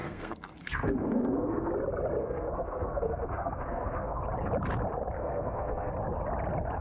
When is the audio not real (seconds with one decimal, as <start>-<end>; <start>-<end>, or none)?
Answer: 0.0-1.7; 2.2-4.2; 5.2-5.9